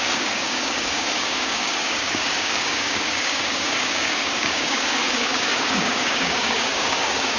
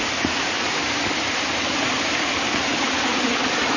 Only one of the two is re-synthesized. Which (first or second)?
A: first